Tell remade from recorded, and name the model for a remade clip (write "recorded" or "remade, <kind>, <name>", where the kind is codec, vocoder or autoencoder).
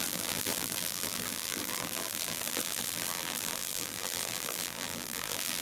remade, vocoder, BigVGAN v2